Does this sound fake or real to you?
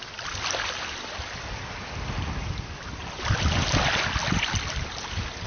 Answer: real